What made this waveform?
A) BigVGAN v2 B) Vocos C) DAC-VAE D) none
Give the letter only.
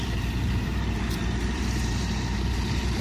A